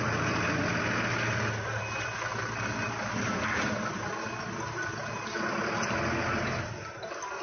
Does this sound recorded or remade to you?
recorded